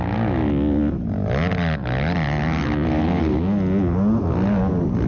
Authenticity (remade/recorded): recorded